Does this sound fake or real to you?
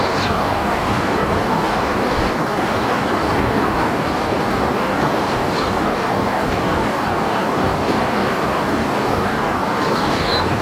fake